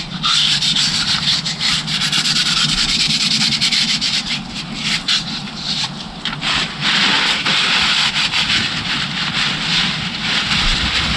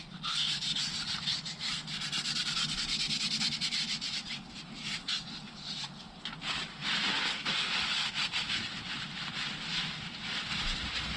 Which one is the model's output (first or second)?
first